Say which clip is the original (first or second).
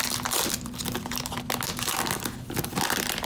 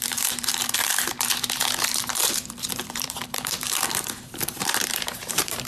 first